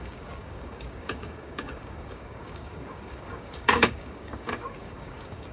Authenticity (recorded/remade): remade